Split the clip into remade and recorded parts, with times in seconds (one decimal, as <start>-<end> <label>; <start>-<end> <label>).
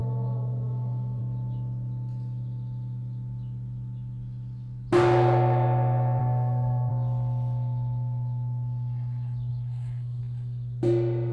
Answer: 0.0-1.2 remade; 1.2-6.2 recorded; 6.2-6.9 remade; 6.9-9.5 recorded; 9.5-10.2 remade; 10.2-11.3 recorded